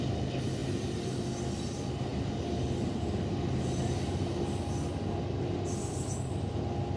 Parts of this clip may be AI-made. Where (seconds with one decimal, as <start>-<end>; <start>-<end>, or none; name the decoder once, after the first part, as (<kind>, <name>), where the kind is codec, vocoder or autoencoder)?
none